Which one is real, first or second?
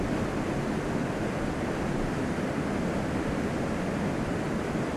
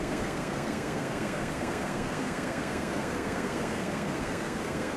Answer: first